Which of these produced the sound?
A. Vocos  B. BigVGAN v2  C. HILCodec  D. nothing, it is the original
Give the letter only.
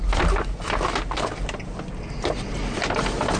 D